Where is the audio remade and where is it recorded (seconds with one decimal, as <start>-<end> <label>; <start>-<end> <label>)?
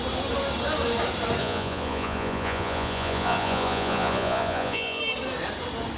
0.0-1.4 recorded; 1.4-5.0 remade; 5.0-6.0 recorded